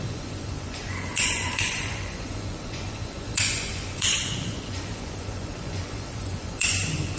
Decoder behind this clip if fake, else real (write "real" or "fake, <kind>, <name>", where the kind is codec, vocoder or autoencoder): fake, vocoder, Vocos